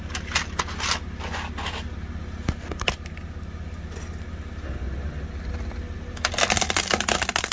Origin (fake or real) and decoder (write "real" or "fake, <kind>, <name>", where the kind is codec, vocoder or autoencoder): real